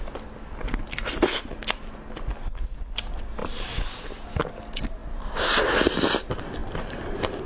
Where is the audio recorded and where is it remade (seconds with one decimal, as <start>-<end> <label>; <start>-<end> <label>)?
0.0-2.4 recorded; 2.4-3.0 remade; 3.0-3.4 recorded; 3.4-4.3 remade; 4.3-5.0 recorded; 5.0-5.6 remade; 5.6-7.5 recorded